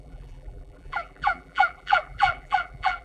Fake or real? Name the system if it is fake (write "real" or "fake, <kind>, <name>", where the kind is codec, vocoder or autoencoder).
fake, vocoder, BigVGAN v2